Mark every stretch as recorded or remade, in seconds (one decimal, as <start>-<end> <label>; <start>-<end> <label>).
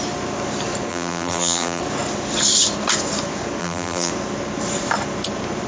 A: 0.0-0.9 recorded; 0.9-1.8 remade; 1.8-3.6 recorded; 3.6-4.1 remade; 4.1-5.7 recorded